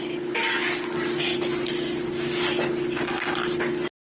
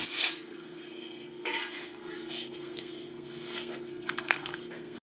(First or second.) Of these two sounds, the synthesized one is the second